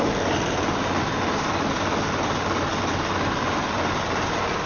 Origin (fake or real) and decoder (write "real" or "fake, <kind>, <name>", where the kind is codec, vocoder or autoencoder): real